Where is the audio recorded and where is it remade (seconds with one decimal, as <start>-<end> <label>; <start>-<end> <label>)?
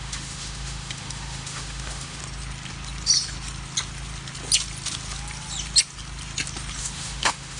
0.0-2.2 remade; 2.2-6.8 recorded; 6.8-7.6 remade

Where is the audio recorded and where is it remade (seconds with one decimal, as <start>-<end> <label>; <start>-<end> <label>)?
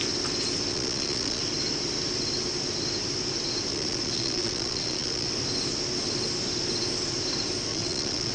0.0-0.7 recorded; 0.7-1.4 remade; 1.4-3.7 recorded; 3.7-5.3 remade; 5.3-7.7 recorded; 7.7-8.3 remade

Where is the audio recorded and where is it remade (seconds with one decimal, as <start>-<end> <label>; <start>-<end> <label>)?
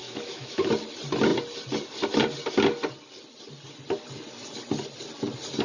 0.0-0.7 remade; 0.7-5.6 recorded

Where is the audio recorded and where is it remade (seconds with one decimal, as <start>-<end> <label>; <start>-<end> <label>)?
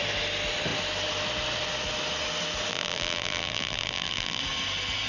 0.0-2.7 recorded; 2.7-4.4 remade; 4.4-5.1 recorded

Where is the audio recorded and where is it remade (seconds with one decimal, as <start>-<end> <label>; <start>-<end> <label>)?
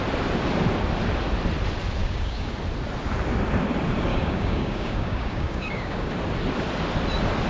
0.0-2.0 recorded; 2.0-2.5 remade; 2.5-4.1 recorded; 4.1-6.1 remade; 6.1-7.5 recorded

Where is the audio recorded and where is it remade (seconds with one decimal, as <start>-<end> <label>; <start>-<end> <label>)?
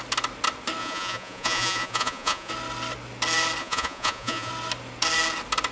0.0-0.8 recorded; 0.8-2.5 remade; 2.5-3.6 recorded; 3.6-4.5 remade; 4.5-5.7 recorded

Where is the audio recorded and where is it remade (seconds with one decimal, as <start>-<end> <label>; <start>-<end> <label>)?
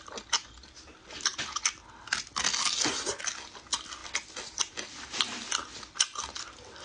0.0-6.8 recorded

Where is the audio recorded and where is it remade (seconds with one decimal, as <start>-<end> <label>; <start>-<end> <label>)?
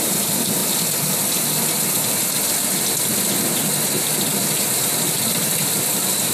0.0-6.3 recorded